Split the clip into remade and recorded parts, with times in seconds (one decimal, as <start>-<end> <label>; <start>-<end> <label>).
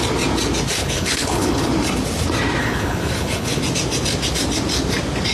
0.0-0.8 recorded; 0.8-1.7 remade; 1.7-2.6 recorded; 2.6-3.6 remade; 3.6-5.3 recorded